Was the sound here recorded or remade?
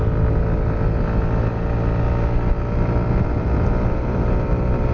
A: recorded